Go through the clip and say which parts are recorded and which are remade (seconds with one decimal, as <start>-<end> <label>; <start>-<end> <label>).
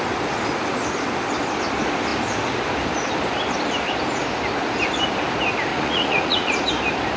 0.0-5.7 recorded; 5.7-6.7 remade; 6.7-7.2 recorded